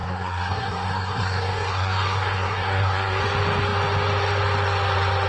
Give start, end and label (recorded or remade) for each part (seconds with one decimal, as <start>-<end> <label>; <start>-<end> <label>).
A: 0.0-3.2 remade; 3.2-5.3 recorded

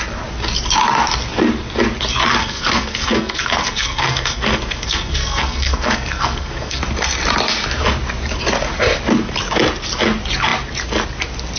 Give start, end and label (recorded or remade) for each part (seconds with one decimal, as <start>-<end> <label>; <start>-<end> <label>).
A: 0.0-2.4 recorded; 2.4-6.8 remade; 6.8-11.6 recorded

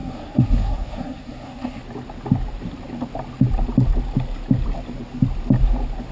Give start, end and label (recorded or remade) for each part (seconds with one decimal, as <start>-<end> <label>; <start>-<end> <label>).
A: 0.0-1.8 remade; 1.8-6.1 recorded

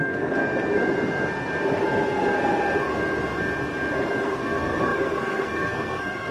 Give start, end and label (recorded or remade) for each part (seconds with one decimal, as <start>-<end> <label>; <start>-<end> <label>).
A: 0.0-0.4 remade; 0.4-4.2 recorded; 4.2-6.3 remade

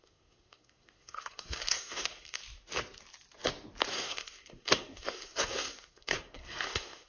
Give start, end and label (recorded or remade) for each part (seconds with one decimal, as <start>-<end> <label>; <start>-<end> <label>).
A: 0.0-2.4 remade; 2.4-3.9 recorded; 3.9-7.1 remade

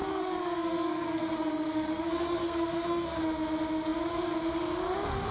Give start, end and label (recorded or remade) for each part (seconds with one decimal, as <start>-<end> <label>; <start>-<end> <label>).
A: 0.0-3.2 remade; 3.2-5.3 recorded